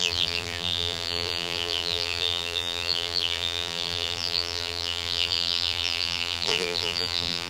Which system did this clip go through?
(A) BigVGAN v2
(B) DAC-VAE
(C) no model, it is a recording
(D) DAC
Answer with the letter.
A